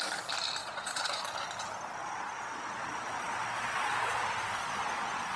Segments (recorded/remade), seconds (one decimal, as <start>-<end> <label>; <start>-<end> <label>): 0.0-0.6 recorded; 0.6-1.2 remade; 1.2-2.0 recorded; 2.0-5.4 remade